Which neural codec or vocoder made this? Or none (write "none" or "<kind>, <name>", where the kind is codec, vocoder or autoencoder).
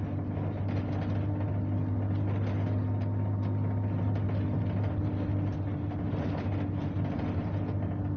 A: none